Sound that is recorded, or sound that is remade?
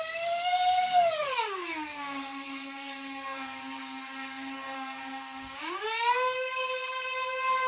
remade